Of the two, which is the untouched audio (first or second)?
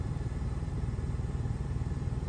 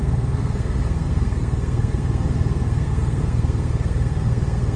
first